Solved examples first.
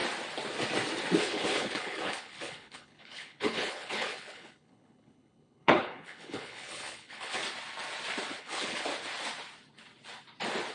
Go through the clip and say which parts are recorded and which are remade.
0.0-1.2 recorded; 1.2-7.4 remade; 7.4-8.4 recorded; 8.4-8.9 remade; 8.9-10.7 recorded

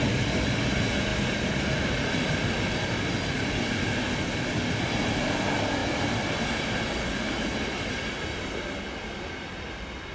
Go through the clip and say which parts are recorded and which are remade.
0.0-1.1 recorded; 1.1-4.8 remade; 4.8-5.8 recorded; 5.8-7.0 remade; 7.0-10.1 recorded

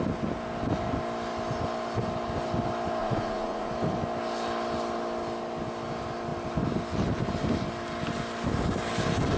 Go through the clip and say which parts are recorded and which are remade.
0.0-3.0 recorded; 3.0-3.7 remade; 3.7-9.4 recorded

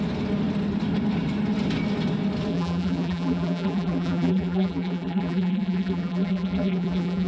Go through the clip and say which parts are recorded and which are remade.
0.0-2.5 recorded; 2.5-7.3 remade